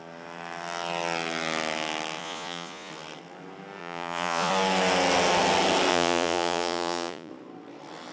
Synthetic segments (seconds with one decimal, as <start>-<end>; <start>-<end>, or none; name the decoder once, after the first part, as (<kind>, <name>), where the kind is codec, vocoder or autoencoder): 2.2-2.9 (vocoder, Vocos); 3.8-4.5; 5.9-7.3